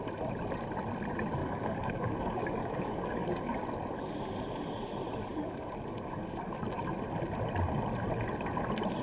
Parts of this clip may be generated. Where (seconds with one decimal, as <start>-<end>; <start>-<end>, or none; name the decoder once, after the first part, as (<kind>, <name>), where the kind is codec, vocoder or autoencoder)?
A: 1.4-3.6 (codec, DAC); 5.3-6.6